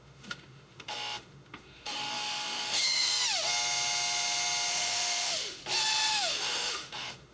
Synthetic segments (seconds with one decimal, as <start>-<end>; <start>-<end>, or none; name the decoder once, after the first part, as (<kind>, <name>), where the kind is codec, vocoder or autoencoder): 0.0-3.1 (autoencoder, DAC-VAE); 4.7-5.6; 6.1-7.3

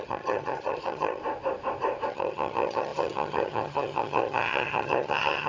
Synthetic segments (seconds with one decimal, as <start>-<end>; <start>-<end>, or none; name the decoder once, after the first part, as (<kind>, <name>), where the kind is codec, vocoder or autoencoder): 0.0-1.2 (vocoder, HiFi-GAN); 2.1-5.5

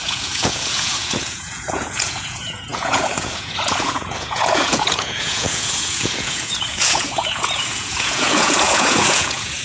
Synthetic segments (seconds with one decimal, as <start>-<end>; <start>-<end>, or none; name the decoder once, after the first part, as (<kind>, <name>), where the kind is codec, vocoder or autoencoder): 0.0-9.6 (vocoder, Vocos)